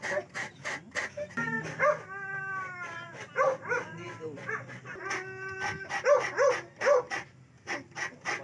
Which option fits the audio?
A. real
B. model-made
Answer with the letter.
A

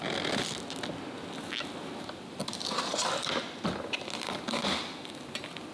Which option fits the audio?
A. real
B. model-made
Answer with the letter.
A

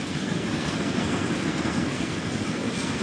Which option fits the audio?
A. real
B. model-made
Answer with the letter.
B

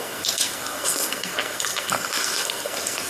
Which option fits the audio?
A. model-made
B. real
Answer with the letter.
A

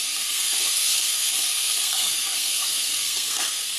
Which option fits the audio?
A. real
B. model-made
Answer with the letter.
B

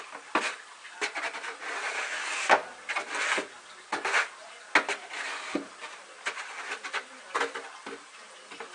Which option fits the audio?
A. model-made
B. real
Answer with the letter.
B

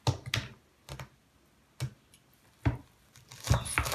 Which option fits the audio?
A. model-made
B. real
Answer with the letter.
B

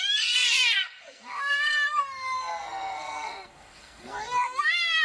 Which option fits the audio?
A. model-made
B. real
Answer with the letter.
A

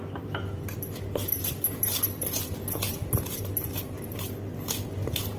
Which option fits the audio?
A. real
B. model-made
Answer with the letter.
A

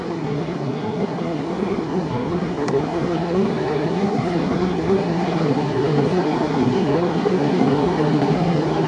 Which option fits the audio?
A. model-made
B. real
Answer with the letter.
A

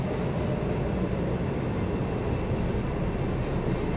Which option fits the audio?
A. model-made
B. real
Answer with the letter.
B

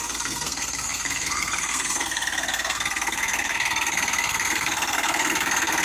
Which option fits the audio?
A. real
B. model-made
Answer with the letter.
B